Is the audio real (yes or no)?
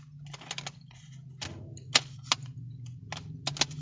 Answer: yes